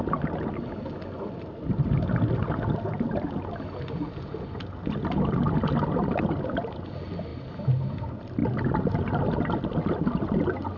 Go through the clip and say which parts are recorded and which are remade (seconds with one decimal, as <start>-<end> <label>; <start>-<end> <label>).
0.0-10.8 recorded